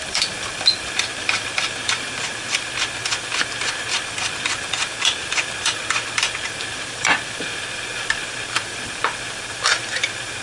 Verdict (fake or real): fake